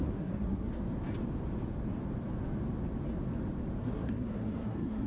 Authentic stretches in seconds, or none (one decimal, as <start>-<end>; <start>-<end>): 0.7-3.8